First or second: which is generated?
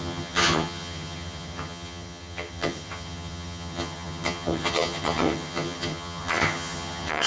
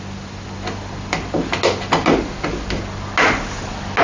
first